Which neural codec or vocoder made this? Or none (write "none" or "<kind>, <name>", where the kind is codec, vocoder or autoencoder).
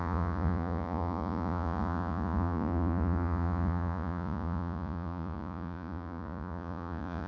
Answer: vocoder, Vocos